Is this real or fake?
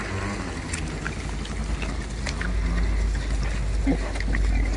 real